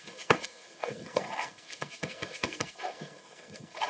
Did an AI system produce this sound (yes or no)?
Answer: yes